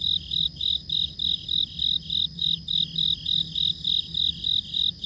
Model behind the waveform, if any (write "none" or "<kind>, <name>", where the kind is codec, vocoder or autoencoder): none